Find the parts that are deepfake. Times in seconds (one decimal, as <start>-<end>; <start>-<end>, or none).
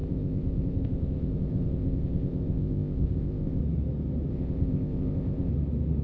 0.0-3.6; 4.3-5.5